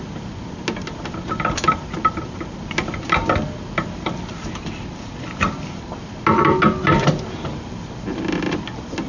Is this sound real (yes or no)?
yes